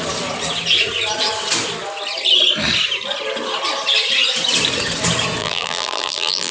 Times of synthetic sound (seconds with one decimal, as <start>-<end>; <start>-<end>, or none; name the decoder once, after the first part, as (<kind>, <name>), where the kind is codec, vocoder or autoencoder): 5.4-6.5 (vocoder, BigVGAN v2)